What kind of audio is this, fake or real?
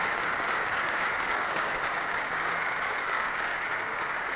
fake